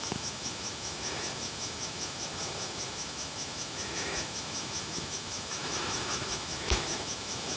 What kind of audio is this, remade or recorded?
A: remade